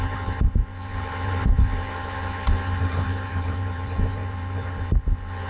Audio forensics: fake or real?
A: fake